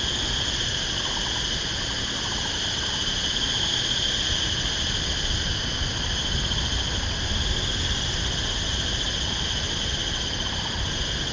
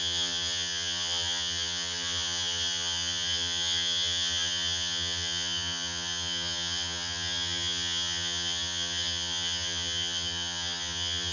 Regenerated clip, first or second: second